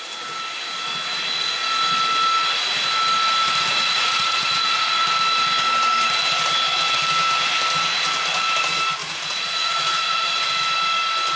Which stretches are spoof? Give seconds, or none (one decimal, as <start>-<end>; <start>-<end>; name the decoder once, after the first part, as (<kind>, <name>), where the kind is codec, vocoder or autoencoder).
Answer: 3.7-5.1 (vocoder, Vocos); 9.0-10.5